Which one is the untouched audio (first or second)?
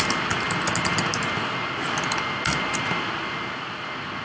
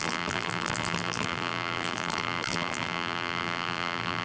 first